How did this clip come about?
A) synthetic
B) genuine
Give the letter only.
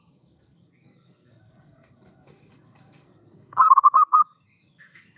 A